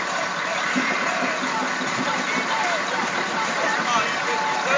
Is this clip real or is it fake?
real